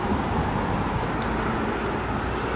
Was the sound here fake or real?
real